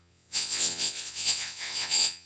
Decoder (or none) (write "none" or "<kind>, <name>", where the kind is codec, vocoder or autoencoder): vocoder, WaveNeXt